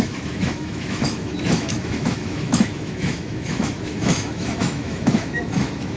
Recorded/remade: remade